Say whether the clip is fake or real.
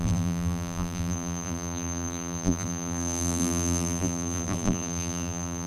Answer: fake